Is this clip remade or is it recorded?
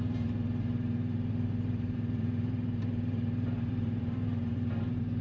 remade